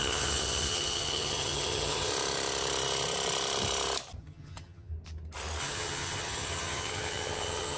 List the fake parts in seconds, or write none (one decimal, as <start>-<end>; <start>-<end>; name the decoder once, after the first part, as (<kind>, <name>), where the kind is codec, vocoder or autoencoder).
0.0-2.1 (vocoder, HiFi-GAN); 4.2-4.9; 5.6-7.8